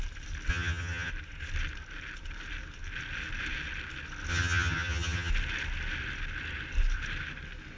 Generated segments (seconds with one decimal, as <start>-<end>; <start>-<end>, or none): 0.5-1.1; 4.3-5.3